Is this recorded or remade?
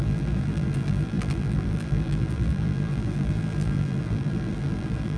remade